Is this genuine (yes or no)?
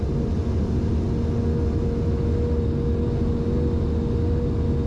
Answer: yes